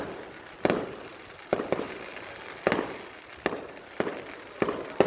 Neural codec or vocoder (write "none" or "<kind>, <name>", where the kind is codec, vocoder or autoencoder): none